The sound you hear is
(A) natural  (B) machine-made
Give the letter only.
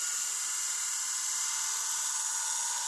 A